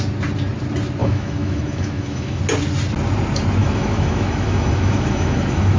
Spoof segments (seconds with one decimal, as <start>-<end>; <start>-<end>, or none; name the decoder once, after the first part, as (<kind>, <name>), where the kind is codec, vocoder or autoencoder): 1.0-2.4 (autoencoder, DAC-VAE); 3.6-5.8